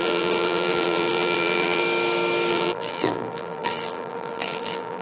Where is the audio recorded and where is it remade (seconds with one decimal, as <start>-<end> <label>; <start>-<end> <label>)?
0.0-1.8 remade; 1.8-2.5 recorded; 2.5-5.0 remade